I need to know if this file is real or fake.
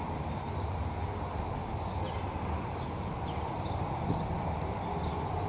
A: real